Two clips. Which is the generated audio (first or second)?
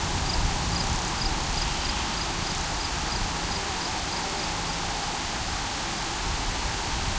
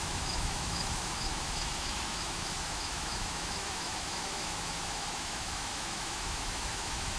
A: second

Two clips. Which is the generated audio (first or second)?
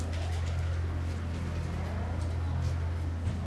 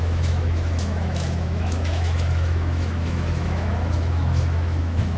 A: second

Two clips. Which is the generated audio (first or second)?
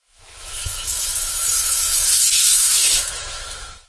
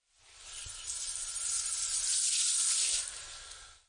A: first